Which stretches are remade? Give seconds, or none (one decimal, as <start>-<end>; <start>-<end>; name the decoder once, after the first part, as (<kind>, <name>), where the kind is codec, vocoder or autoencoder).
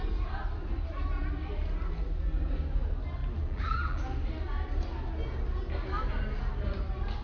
3.2-4.0 (vocoder, BigVGAN v2)